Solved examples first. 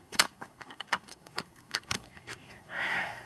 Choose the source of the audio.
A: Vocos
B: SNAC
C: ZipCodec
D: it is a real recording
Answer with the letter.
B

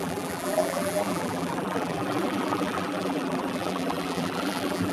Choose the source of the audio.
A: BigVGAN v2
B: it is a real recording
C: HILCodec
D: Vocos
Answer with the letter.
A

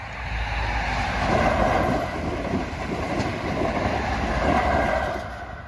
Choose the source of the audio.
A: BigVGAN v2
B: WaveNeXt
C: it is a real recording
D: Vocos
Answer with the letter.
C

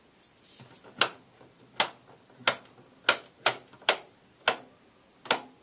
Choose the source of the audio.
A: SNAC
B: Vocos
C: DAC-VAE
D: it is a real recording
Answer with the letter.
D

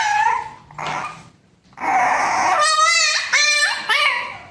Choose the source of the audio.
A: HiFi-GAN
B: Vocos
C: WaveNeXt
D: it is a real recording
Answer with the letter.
D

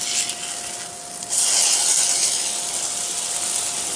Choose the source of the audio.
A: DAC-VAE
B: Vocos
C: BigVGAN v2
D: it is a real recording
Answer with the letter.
D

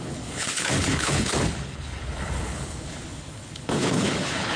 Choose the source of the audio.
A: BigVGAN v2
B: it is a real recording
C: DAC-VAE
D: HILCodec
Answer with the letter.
D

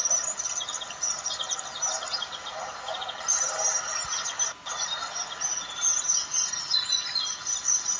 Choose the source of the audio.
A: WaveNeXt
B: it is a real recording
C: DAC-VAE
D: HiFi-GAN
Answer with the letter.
B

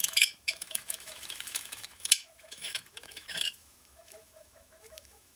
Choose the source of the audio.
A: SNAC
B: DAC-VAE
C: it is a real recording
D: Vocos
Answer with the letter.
B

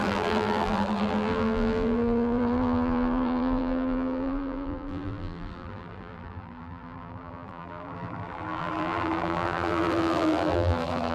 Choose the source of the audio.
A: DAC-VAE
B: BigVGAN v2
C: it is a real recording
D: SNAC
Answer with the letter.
B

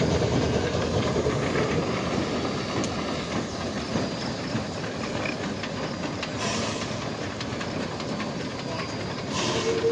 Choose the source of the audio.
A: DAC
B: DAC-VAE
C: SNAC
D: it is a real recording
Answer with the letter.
D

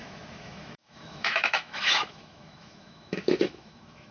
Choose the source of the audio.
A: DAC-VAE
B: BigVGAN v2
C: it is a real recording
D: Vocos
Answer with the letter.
A